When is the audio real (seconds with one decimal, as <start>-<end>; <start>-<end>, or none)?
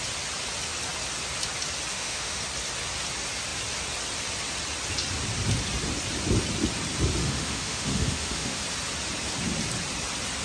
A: 0.0-1.9; 2.4-7.2; 8.6-10.4